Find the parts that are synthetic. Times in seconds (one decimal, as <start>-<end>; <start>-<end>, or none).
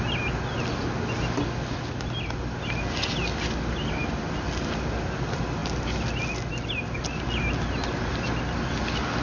none